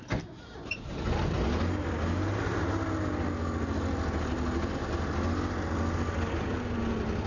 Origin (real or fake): real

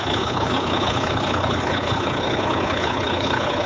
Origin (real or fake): fake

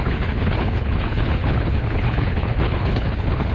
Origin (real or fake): fake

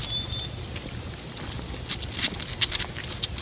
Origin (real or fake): real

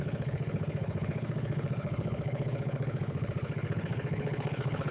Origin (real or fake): fake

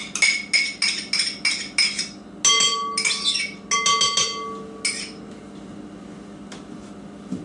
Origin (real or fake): real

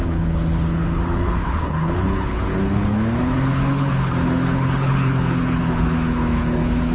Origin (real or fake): fake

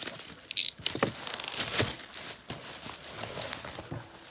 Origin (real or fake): real